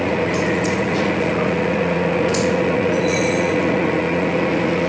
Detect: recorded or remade remade